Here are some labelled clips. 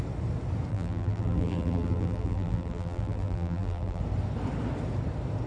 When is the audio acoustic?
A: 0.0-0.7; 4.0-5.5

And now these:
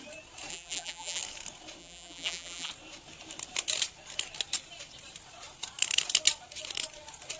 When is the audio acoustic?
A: 0.0-0.5; 1.2-1.8; 2.7-7.4

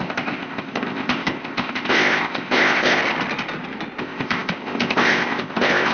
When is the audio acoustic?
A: 3.0-4.0

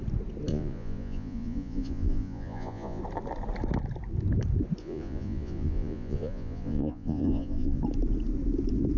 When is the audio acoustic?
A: 0.0-0.5; 3.0-4.8; 7.8-9.0